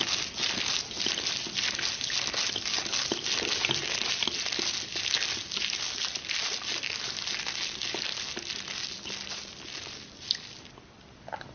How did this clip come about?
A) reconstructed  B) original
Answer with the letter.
B